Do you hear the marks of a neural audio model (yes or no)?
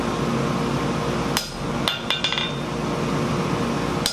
no